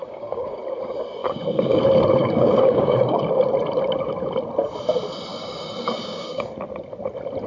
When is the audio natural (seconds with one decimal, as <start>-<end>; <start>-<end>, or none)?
0.6-1.2; 1.8-2.2; 3.2-5.3; 6.5-7.5